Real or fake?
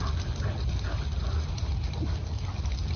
real